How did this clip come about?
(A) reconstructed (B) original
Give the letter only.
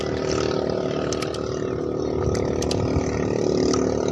B